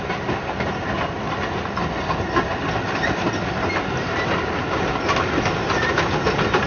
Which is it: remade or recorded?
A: recorded